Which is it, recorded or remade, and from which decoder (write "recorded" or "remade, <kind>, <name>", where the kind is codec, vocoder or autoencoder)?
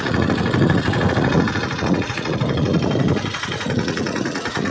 remade, vocoder, Vocos